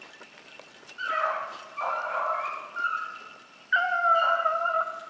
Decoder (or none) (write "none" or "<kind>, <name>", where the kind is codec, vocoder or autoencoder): none